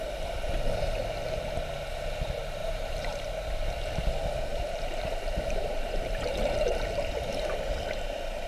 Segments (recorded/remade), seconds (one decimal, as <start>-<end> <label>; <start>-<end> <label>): 0.0-2.6 recorded; 2.6-4.1 remade; 4.1-4.5 recorded; 4.5-7.1 remade; 7.1-8.5 recorded